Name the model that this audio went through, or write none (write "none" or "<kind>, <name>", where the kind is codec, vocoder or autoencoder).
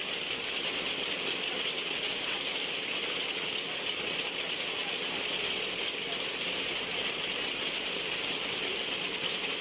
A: none